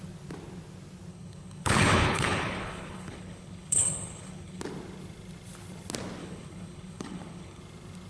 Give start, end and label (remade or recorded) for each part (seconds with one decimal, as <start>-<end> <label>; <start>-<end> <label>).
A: 0.0-1.1 recorded; 1.1-4.6 remade; 4.6-6.2 recorded; 6.2-7.6 remade; 7.6-8.1 recorded